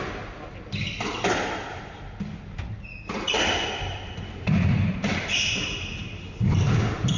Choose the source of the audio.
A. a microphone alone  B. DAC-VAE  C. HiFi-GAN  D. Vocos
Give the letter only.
A